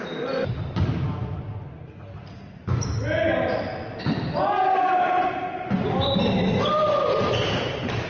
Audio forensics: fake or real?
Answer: real